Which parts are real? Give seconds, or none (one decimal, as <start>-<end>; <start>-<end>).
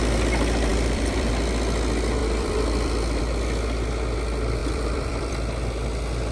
0.0-0.7; 1.3-2.2; 3.2-4.6; 5.3-6.3